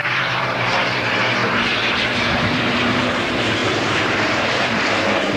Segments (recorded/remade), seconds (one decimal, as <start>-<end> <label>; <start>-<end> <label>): 0.0-5.4 remade